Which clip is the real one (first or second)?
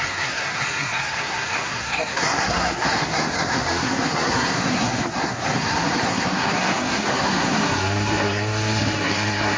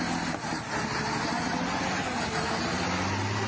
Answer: second